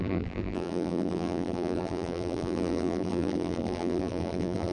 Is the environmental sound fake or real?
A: fake